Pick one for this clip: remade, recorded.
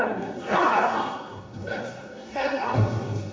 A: remade